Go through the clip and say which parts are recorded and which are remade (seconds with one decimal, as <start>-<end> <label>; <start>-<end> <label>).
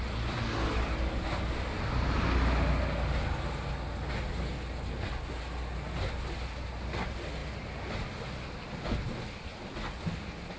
0.0-10.6 recorded